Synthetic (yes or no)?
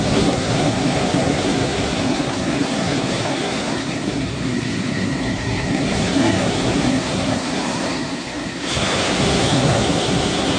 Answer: yes